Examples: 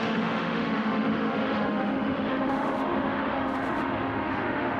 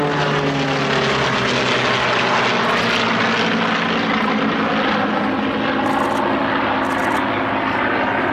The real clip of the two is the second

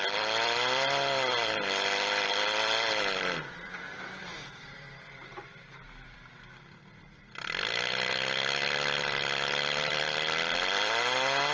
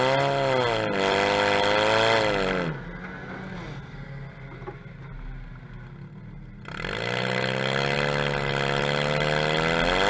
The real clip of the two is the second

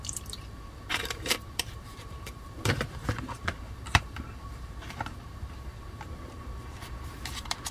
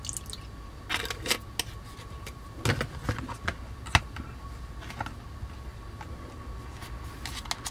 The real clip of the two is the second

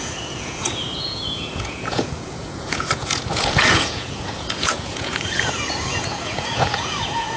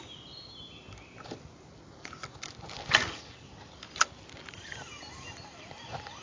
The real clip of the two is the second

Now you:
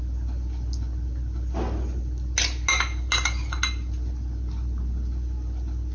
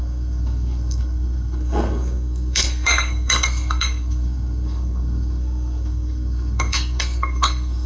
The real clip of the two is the first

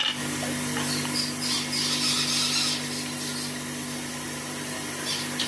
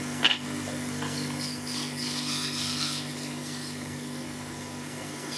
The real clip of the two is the first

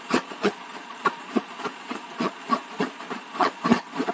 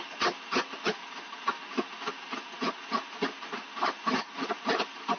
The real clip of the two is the second